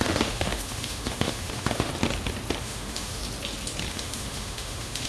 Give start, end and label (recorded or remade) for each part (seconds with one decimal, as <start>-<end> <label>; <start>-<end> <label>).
0.0-1.9 remade; 1.9-2.6 recorded; 2.6-3.2 remade; 3.2-3.9 recorded; 3.9-5.1 remade